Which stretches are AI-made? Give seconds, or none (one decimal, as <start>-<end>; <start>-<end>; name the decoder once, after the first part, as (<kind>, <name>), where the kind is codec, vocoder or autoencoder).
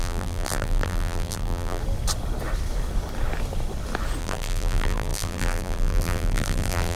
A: 0.0-1.8 (vocoder, BigVGAN v2); 4.2-7.0